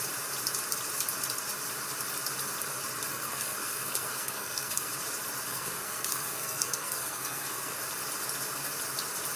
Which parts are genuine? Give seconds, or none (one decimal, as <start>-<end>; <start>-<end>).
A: 0.0-3.1; 4.9-5.5; 7.8-9.4